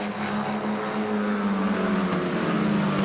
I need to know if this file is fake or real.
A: real